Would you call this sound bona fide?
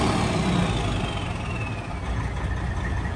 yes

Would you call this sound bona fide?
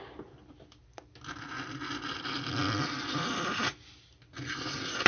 yes